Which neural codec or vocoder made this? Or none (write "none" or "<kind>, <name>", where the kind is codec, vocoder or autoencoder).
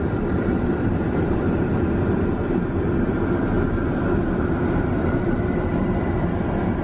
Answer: vocoder, BigVGAN v2